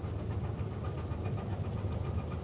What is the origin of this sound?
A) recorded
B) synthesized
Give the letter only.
A